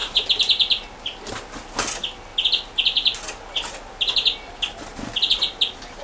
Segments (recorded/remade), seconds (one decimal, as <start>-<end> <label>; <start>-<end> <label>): 0.0-6.0 recorded

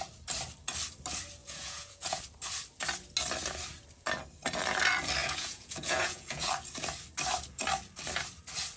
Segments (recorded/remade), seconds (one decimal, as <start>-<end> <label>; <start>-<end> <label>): 0.0-1.4 recorded; 1.4-2.2 remade; 2.2-5.2 recorded; 5.2-6.5 remade; 6.5-8.8 recorded